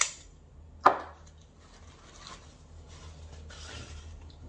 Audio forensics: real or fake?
real